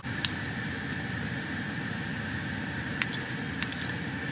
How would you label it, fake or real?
real